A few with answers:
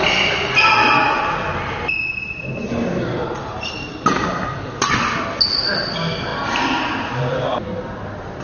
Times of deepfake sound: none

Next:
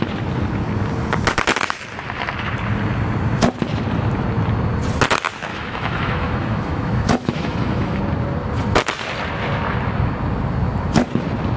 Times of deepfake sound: 5.5-8.0 (autoencoder, DAC-VAE)

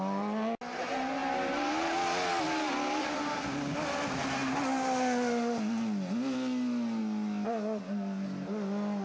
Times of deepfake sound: none

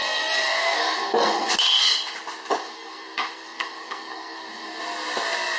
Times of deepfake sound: 0.0-1.5 (codec, SNAC); 2.6-4.8